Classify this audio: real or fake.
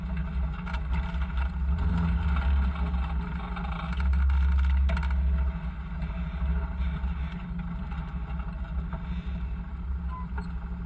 real